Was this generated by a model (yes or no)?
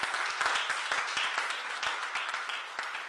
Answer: no